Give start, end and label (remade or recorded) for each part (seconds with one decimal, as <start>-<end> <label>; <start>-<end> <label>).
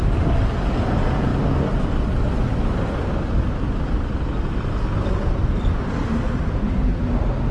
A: 0.0-7.5 recorded